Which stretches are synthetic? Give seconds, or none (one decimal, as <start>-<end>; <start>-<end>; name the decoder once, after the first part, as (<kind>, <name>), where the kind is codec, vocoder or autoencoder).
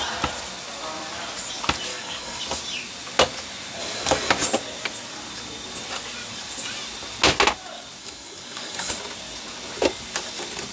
1.9-2.4 (codec, DAC); 3.8-4.3; 8.0-8.9